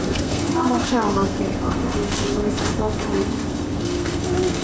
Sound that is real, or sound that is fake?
fake